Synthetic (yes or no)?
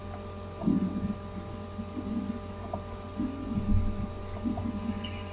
no